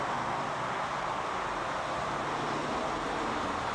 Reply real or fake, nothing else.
real